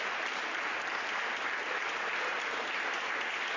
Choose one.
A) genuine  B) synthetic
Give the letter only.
A